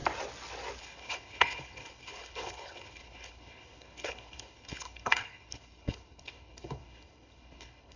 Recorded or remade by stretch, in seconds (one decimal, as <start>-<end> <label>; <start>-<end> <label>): 0.0-0.8 recorded; 0.8-8.0 remade